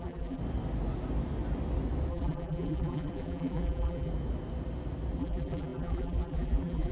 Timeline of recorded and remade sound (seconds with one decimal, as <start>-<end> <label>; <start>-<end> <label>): 0.0-0.4 remade; 0.4-2.1 recorded; 2.1-4.1 remade; 4.1-5.2 recorded; 5.2-6.9 remade